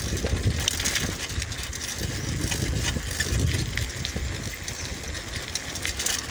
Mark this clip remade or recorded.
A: recorded